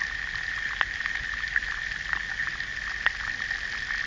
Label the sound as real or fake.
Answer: real